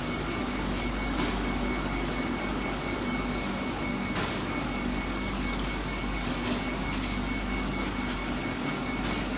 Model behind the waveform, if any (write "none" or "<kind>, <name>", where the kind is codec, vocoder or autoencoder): codec, DAC